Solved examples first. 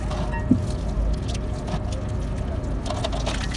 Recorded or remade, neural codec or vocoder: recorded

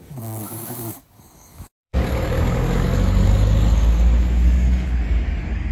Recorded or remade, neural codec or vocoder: remade, codec, DAC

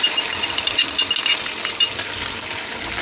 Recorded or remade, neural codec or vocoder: recorded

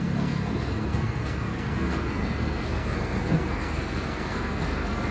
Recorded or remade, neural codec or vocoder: remade, codec, SNAC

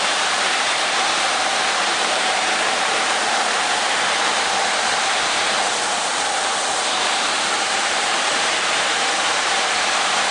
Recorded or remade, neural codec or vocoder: remade, vocoder, BigVGAN v2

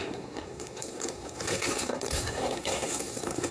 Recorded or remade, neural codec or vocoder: remade, codec, SNAC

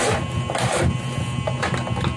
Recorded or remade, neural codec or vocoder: recorded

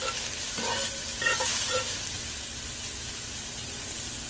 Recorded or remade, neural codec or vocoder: recorded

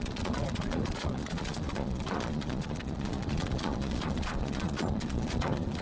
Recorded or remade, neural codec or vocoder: remade, vocoder, Vocos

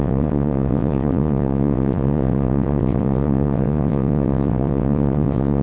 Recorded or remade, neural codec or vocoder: remade, vocoder, WaveNeXt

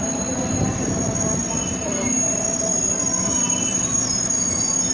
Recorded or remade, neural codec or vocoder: recorded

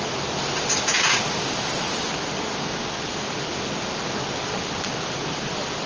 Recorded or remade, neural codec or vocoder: recorded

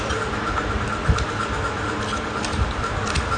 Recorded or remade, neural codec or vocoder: recorded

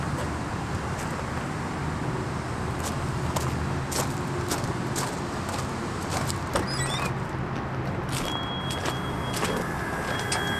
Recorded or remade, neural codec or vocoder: recorded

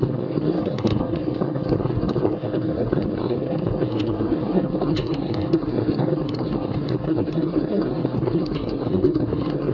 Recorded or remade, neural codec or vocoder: remade, codec, SNAC